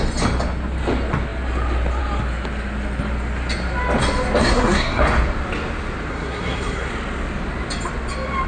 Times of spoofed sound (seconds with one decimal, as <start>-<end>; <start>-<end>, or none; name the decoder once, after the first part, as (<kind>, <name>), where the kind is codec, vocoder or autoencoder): 4.4-5.0 (codec, SNAC); 6.1-6.9

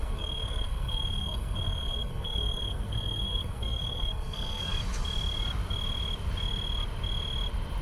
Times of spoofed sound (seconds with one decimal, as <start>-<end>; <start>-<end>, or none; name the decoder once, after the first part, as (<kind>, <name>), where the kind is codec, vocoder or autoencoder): 0.0-4.7 (codec, SNAC)

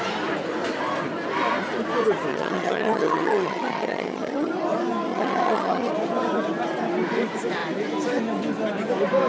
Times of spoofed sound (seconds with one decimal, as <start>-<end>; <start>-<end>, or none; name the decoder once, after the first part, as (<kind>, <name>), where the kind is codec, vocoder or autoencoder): 2.3-4.5 (vocoder, HiFi-GAN); 5.1-5.9

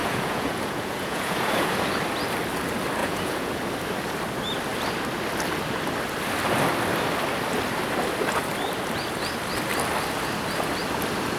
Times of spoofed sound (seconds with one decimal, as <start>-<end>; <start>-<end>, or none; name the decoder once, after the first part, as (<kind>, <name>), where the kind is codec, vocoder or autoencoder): 0.0-1.8 (vocoder, Vocos); 3.0-3.6